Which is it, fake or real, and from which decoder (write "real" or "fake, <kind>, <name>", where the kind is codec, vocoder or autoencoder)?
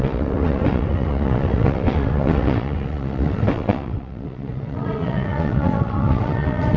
fake, vocoder, WaveNeXt